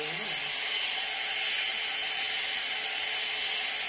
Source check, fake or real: real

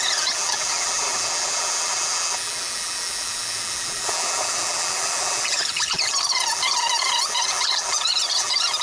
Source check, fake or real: fake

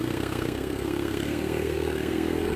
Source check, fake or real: fake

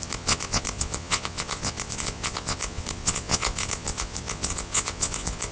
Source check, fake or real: fake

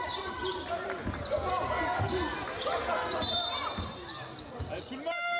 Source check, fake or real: real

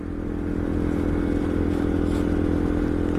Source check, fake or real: real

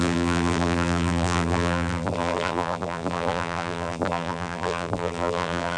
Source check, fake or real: fake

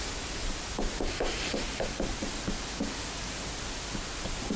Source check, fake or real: real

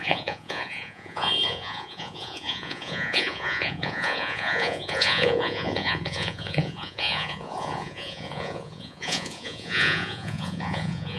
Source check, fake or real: fake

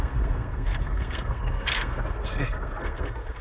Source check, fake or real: fake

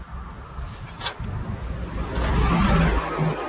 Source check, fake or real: real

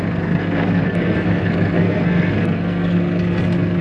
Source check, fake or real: fake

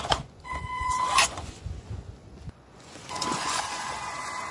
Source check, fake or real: fake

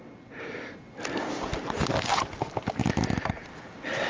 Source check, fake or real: real